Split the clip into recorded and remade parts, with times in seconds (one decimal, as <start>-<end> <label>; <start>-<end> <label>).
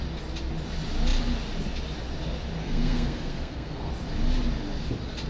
0.0-2.6 recorded; 2.6-3.9 remade; 3.9-5.3 recorded